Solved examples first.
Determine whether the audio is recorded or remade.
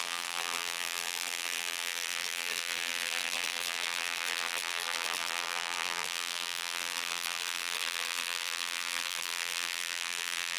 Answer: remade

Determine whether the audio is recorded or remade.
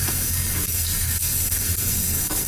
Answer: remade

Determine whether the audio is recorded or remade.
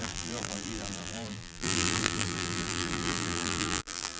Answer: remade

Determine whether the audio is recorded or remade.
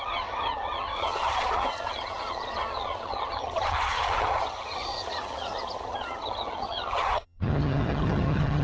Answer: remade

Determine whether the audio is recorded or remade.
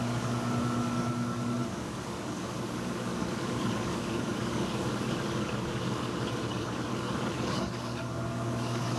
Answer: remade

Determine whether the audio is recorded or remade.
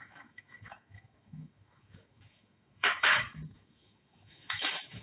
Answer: remade